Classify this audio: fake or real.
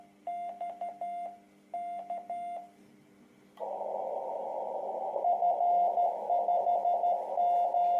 real